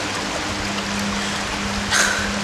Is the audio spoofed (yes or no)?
no